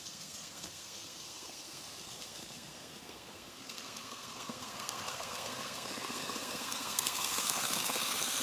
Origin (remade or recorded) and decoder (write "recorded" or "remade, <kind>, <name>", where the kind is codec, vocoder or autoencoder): remade, codec, SNAC